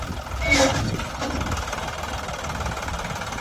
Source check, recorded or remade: recorded